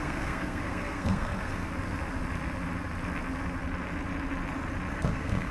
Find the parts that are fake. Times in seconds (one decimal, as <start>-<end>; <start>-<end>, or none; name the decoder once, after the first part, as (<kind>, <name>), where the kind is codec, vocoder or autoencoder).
0.0-1.7 (codec, SNAC); 4.9-5.5